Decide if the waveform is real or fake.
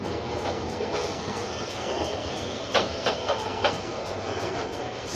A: fake